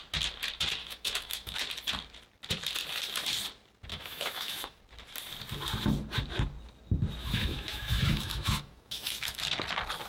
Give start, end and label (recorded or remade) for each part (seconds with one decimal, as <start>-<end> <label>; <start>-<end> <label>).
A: 0.0-0.8 recorded; 0.8-1.6 remade; 1.6-3.9 recorded; 3.9-4.8 remade; 4.8-7.2 recorded; 7.2-9.4 remade; 9.4-10.1 recorded